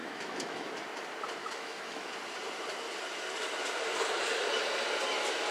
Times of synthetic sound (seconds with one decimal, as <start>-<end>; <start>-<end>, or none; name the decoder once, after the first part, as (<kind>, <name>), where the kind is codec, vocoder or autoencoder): 0.0-0.7 (autoencoder, DAC-VAE); 1.4-2.1